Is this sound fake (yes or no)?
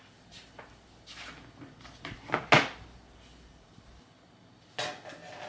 no